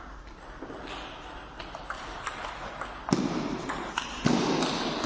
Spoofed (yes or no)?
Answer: no